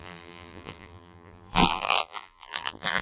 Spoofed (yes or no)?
yes